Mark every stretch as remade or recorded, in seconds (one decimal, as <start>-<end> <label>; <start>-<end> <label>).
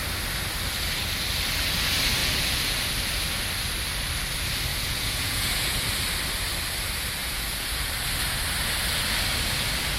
0.0-2.2 recorded; 2.2-2.8 remade; 2.8-4.7 recorded; 4.7-5.8 remade; 5.8-7.2 recorded; 7.2-7.9 remade; 7.9-10.0 recorded